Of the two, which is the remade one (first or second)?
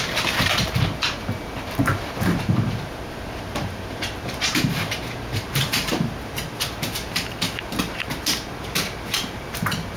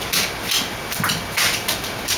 first